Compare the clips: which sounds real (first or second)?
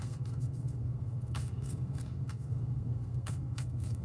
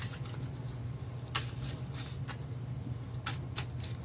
second